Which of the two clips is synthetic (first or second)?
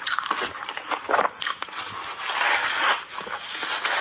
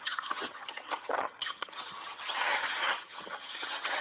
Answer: second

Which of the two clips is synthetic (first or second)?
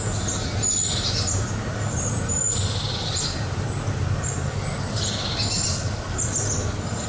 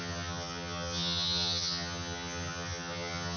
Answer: second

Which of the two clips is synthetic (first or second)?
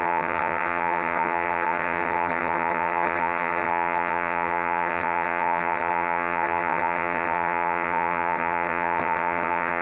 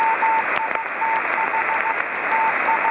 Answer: first